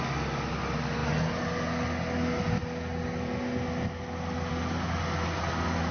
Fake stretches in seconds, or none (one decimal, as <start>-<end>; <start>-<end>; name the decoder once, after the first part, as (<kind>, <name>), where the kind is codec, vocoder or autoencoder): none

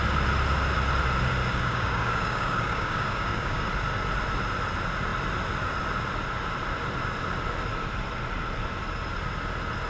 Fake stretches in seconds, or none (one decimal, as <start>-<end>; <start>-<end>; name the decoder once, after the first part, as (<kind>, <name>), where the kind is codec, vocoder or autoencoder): 1.4-3.7 (codec, DAC)

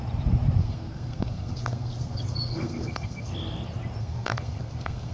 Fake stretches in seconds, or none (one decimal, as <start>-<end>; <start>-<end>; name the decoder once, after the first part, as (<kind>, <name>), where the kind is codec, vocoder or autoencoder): 0.6-3.3 (codec, SNAC); 4.0-5.1